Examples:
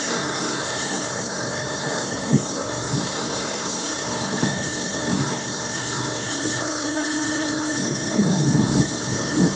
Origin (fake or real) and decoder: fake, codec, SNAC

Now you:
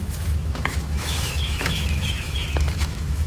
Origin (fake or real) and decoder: fake, autoencoder, DAC-VAE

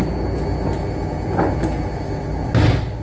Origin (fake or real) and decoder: real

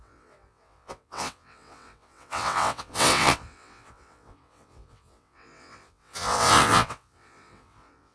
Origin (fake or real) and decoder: fake, vocoder, WaveNeXt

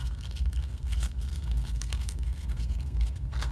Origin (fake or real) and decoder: fake, codec, SNAC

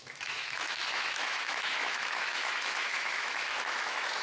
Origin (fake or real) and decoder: fake, autoencoder, DAC-VAE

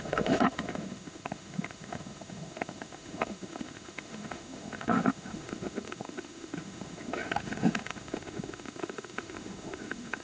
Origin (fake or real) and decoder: fake, autoencoder, DAC-VAE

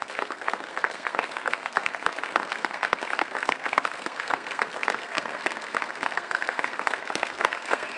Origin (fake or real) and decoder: fake, codec, SNAC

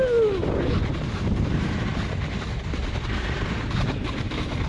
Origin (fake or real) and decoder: real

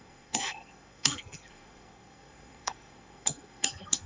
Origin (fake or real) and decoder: fake, codec, SNAC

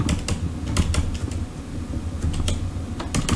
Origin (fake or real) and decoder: real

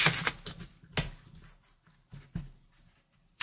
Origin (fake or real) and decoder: real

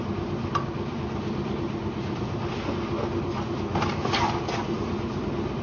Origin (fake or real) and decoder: real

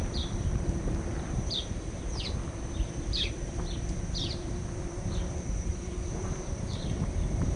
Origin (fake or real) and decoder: fake, vocoder, BigVGAN v2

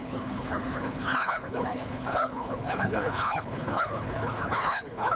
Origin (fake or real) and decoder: fake, codec, HILCodec